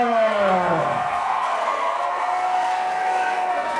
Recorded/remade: remade